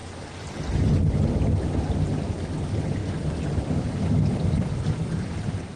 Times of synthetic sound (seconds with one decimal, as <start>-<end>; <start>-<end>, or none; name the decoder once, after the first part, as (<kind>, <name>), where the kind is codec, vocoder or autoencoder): none